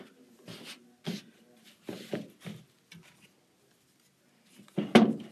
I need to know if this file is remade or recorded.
recorded